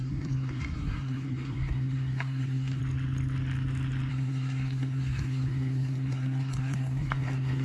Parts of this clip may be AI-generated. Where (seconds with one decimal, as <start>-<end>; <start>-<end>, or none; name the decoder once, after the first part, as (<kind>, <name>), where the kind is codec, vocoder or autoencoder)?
0.0-2.8 (codec, SNAC); 4.1-7.6